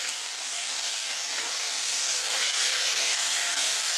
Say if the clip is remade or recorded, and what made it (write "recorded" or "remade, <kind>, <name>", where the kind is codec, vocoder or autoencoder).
remade, codec, DAC